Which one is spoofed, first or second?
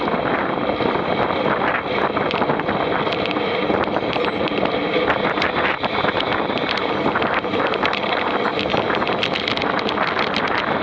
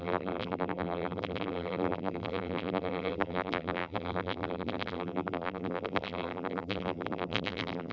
second